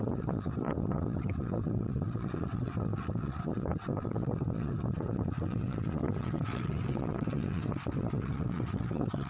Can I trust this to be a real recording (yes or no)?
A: no